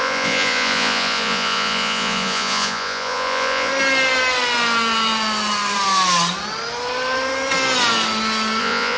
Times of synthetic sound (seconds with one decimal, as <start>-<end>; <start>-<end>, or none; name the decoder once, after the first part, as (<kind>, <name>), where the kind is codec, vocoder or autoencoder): 0.0-3.7 (vocoder, Vocos); 8.6-9.0